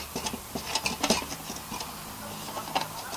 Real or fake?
real